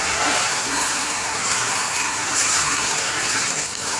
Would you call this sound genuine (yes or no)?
no